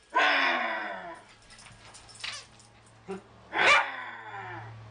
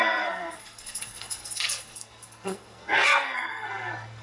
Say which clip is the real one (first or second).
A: first